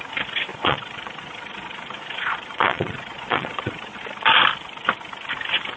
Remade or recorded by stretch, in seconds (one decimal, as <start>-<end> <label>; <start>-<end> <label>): 0.0-0.5 recorded; 0.5-4.0 remade; 4.0-5.8 recorded